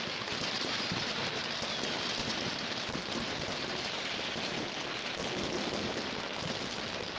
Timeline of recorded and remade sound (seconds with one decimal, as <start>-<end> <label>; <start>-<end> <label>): 0.0-1.4 remade; 1.4-2.2 recorded; 2.2-5.2 remade; 5.2-7.2 recorded